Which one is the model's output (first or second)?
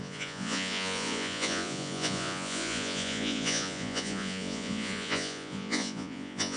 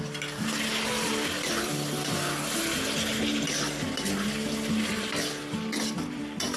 first